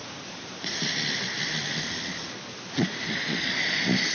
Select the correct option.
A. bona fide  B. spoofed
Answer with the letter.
A